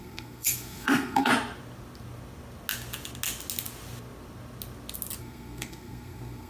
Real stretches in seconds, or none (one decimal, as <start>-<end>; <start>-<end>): 1.3-5.2